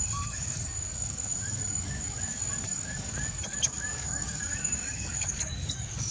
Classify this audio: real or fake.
fake